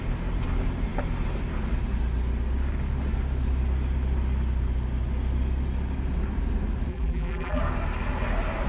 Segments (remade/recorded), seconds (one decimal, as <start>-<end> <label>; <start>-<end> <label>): 0.0-6.9 recorded; 6.9-7.6 remade; 7.6-8.7 recorded